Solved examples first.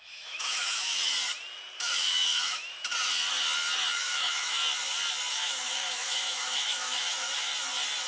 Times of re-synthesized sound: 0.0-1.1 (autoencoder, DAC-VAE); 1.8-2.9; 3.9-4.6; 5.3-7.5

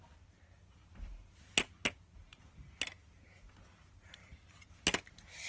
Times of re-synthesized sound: none

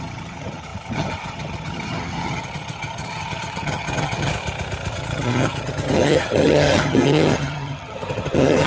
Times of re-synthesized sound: 0.0-4.3 (vocoder, HiFi-GAN); 4.9-8.7

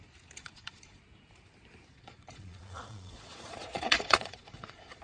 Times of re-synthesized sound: 0.4-1.0 (vocoder, Vocos); 1.9-5.0

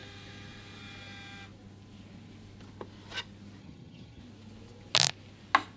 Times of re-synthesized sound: 3.6-4.2 (vocoder, HiFi-GAN)

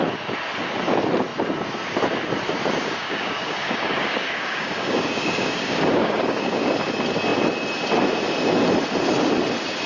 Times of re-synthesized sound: 2.8-6.7 (codec, DAC)